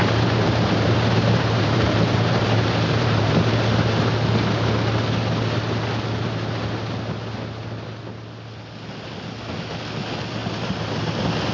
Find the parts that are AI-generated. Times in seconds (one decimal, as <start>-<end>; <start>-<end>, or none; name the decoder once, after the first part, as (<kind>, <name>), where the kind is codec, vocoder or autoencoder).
0.0-3.3 (vocoder, BigVGAN v2); 10.4-11.0